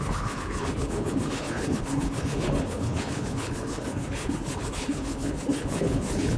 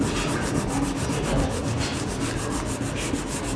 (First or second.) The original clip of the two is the second